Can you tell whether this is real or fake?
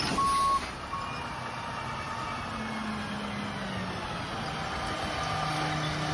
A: real